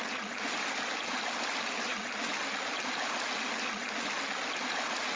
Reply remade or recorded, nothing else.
recorded